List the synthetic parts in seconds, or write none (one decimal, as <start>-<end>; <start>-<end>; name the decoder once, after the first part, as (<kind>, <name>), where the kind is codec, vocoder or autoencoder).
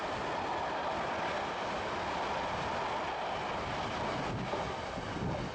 none